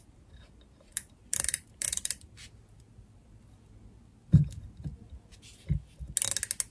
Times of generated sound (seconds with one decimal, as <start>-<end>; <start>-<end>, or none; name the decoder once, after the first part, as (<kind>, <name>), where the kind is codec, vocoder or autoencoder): 0.9-3.7 (vocoder, BigVGAN v2)